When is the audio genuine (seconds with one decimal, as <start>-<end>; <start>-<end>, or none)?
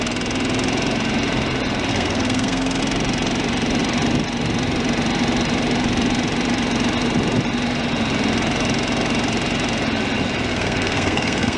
0.0-1.9; 2.8-10.5